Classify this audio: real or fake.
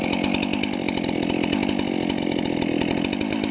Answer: real